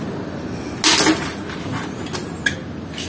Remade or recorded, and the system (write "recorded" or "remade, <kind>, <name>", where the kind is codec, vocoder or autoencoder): recorded